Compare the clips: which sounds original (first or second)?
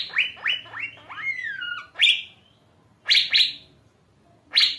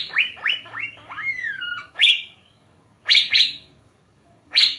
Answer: first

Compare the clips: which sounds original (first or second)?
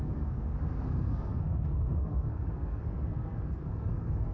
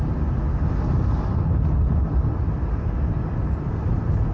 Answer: second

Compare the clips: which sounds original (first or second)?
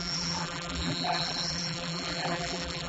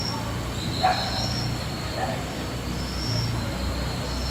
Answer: second